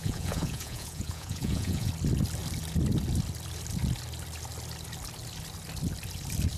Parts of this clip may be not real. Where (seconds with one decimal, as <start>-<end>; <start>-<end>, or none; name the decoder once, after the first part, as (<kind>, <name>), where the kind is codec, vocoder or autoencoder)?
0.0-1.9 (vocoder, Vocos)